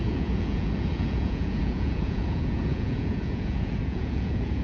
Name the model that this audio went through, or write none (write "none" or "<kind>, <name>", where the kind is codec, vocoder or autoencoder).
vocoder, Vocos